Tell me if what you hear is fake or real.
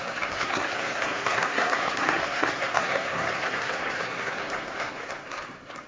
fake